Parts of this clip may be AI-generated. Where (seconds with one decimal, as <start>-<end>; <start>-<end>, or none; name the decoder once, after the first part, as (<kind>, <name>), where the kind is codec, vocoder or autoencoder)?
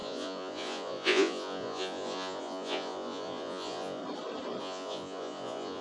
0.0-4.0 (vocoder, Vocos); 4.6-5.8